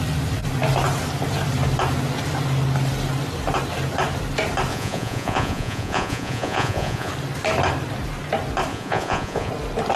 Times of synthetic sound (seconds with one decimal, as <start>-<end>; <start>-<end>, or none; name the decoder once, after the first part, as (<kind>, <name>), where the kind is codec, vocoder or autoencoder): 4.7-7.1 (vocoder, Vocos); 8.7-9.5